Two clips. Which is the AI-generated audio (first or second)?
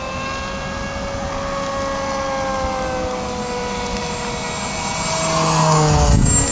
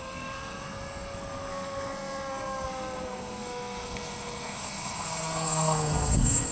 second